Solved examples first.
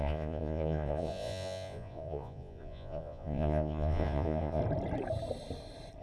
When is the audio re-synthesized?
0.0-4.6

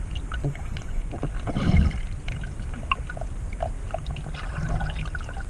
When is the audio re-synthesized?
0.4-1.2